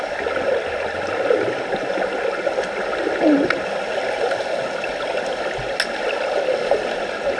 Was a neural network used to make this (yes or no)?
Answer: no